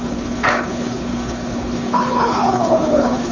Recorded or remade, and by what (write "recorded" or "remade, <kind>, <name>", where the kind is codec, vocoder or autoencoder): remade, codec, HILCodec